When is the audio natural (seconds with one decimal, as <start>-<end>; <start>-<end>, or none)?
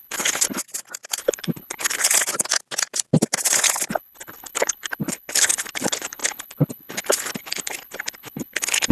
0.6-1.2; 2.0-3.9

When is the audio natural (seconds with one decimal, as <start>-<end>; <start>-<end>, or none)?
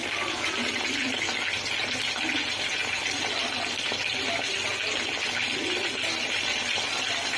0.0-7.4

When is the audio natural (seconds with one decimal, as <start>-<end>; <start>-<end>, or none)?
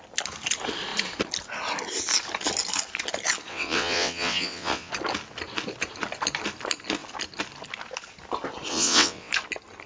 0.0-3.5; 4.9-8.7; 9.3-9.9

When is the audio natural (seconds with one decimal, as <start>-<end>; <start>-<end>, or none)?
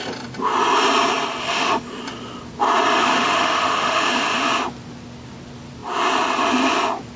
0.0-1.4; 2.0-3.0; 4.5-7.2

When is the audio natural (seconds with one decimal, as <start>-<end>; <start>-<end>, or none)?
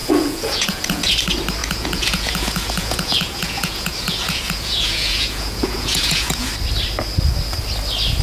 1.1-1.6; 6.5-8.2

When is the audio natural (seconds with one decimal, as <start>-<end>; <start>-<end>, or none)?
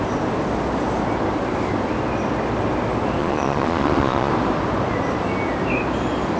0.0-3.2; 4.3-6.4